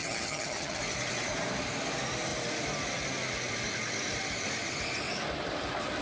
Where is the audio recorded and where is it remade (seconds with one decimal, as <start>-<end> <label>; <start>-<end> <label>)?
0.0-0.8 remade; 0.8-6.0 recorded

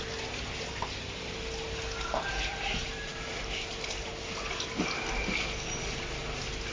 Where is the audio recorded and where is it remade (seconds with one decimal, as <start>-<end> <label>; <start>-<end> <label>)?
0.0-6.7 recorded